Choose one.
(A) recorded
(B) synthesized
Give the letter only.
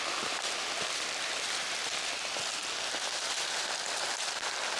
A